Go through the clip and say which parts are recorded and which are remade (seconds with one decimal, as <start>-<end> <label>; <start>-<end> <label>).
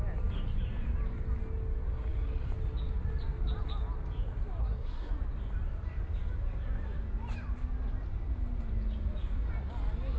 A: 0.0-4.6 recorded; 4.6-5.1 remade; 5.1-10.2 recorded